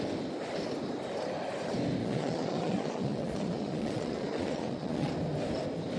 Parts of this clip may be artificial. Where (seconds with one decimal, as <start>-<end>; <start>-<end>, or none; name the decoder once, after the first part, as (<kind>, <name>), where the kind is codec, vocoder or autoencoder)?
2.0-5.1 (vocoder, Vocos)